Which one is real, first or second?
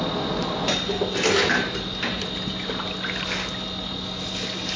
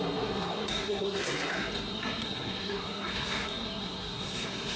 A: first